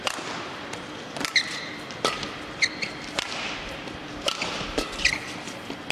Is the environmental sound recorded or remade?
recorded